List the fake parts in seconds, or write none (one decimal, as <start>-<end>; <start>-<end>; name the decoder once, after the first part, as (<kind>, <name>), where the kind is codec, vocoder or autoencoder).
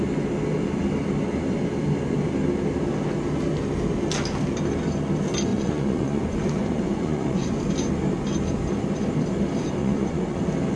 5.5-7.6 (vocoder, Vocos); 9.8-10.4